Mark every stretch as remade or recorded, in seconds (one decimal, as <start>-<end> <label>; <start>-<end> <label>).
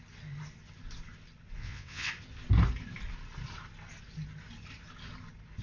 0.0-1.6 recorded; 1.6-2.1 remade; 2.1-5.6 recorded